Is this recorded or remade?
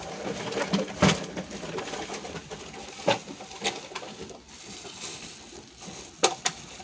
recorded